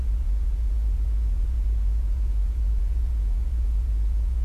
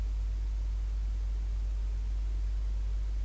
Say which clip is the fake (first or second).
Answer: first